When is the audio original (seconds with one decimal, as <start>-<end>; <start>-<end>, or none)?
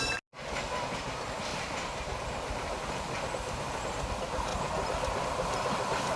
0.0-6.2